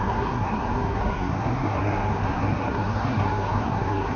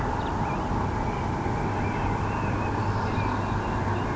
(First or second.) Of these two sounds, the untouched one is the second